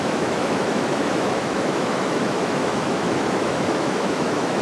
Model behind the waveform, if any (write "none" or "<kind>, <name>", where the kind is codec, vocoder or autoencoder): autoencoder, DAC-VAE